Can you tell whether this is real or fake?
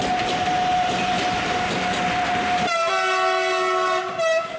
real